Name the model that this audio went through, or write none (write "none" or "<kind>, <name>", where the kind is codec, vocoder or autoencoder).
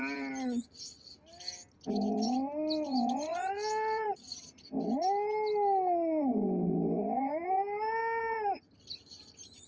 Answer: none